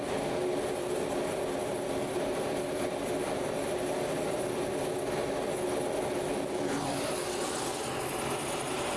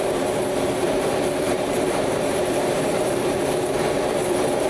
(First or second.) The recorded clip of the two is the first